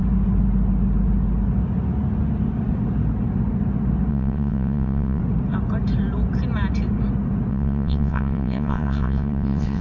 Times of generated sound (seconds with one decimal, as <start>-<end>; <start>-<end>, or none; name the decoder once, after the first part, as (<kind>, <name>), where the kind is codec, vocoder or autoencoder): 4.1-5.2 (vocoder, WaveNeXt); 7.5-9.8